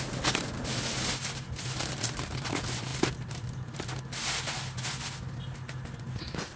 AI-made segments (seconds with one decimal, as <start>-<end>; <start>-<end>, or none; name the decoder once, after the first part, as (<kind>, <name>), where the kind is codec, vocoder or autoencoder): none